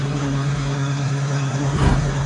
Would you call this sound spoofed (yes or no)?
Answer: yes